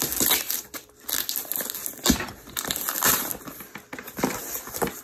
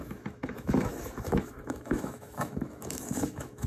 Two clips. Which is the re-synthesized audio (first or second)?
second